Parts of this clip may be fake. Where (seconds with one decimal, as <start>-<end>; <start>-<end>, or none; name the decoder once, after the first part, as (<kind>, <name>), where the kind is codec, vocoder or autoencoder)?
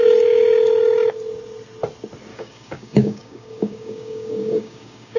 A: 2.3-5.2 (codec, DAC)